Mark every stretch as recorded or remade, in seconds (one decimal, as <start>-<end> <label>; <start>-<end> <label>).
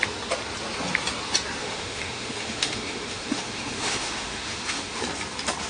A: 0.0-1.6 recorded; 1.6-5.0 remade; 5.0-5.7 recorded